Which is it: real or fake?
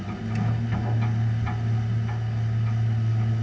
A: real